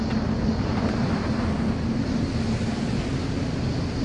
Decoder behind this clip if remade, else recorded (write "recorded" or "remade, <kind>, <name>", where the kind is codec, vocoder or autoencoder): recorded